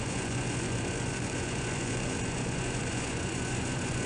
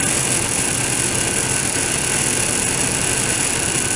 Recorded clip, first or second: second